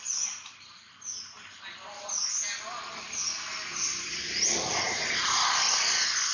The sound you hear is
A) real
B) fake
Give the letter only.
A